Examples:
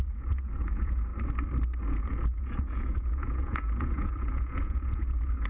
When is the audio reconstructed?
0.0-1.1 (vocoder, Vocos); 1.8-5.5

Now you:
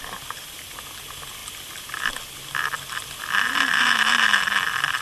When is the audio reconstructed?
none

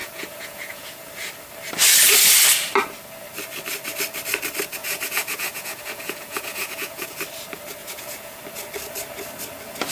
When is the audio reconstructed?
0.0-1.1 (vocoder, Vocos); 4.8-7.2; 7.8-8.4

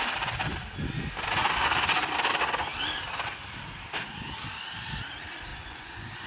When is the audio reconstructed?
5.5-6.3 (vocoder, Vocos)

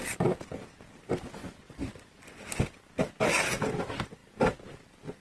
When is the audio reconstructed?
1.4-2.4 (vocoder, Vocos)

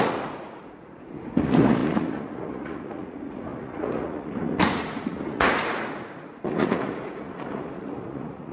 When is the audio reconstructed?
0.0-8.5 (vocoder, Vocos)

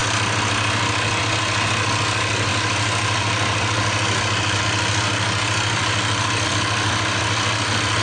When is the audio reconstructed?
none

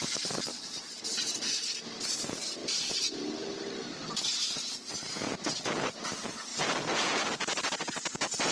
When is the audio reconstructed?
0.5-1.0 (vocoder, Vocos)